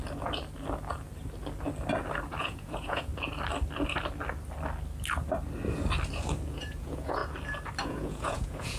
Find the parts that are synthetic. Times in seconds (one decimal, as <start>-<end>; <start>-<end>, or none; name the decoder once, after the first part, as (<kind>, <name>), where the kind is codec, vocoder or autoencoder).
2.4-3.1 (vocoder, Vocos); 6.5-7.2; 7.8-8.8